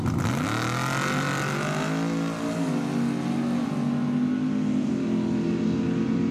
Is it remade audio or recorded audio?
recorded